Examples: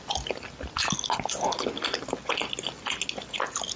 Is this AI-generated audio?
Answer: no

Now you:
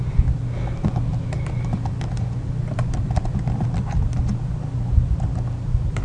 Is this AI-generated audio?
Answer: no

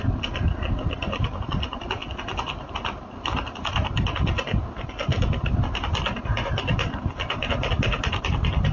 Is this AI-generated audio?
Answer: no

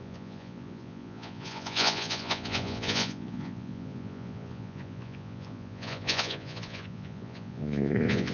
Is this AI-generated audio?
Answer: yes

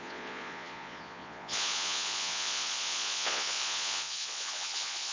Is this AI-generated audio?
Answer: yes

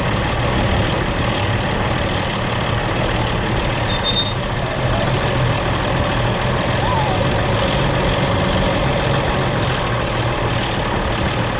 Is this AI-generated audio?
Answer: no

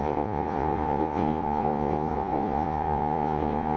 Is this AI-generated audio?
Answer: yes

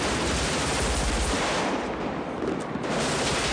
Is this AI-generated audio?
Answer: no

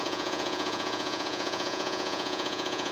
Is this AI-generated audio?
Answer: yes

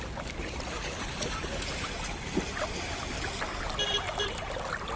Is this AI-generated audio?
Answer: no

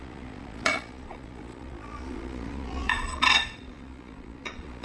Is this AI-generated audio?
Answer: yes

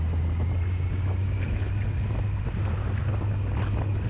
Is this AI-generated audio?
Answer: no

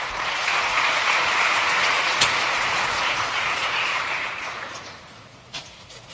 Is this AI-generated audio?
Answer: yes